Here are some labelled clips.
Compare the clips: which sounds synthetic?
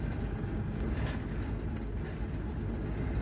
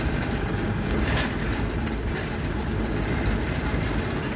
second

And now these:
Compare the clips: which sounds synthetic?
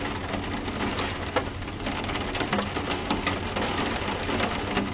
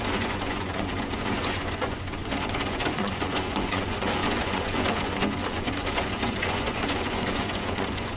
second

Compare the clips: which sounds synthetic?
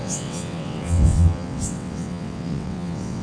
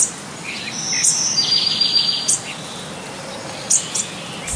first